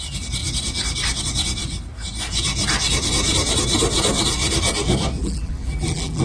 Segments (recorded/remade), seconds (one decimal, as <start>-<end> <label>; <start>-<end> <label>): 0.0-5.2 recorded; 5.2-6.2 remade